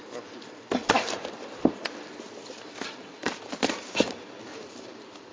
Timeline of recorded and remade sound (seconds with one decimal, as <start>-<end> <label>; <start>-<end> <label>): 0.0-0.8 recorded; 0.8-1.7 remade; 1.7-3.1 recorded; 3.1-3.6 remade; 3.6-4.5 recorded; 4.5-5.3 remade